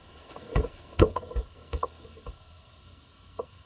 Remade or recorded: remade